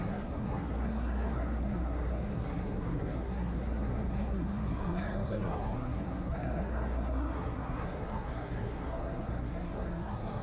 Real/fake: fake